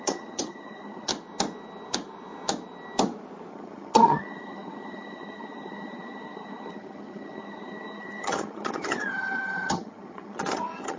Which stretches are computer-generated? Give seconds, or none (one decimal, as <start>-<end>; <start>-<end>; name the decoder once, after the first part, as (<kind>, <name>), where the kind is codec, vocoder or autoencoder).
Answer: 0.0-1.1 (vocoder, HiFi-GAN); 3.5-11.0